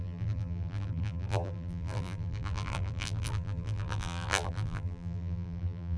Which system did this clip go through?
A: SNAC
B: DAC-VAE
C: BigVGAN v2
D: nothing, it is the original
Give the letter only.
C